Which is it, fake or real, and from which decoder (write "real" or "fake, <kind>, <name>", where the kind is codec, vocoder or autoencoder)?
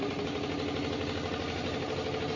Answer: real